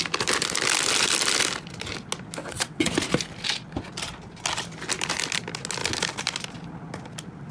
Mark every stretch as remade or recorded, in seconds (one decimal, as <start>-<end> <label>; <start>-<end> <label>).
0.0-2.4 recorded; 2.4-2.9 remade; 2.9-7.5 recorded